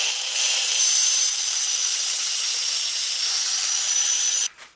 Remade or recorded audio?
remade